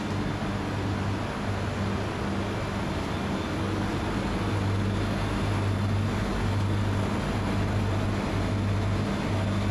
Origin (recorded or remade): recorded